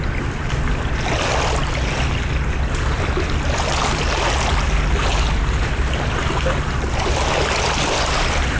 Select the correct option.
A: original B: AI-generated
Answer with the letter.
A